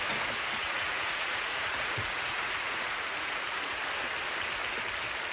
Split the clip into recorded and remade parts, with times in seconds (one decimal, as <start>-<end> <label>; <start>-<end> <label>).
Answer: 0.0-0.6 recorded; 0.6-3.8 remade; 3.8-5.3 recorded